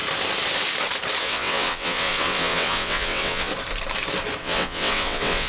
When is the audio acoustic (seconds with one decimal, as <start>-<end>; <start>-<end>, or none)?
0.0-1.2; 3.5-4.4